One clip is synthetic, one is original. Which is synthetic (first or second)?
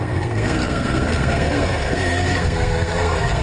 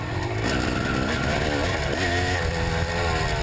first